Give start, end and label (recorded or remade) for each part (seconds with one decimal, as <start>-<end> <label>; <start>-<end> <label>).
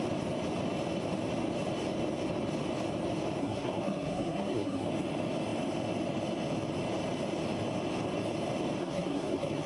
0.0-3.4 recorded; 3.4-4.9 remade; 4.9-8.8 recorded; 8.8-9.7 remade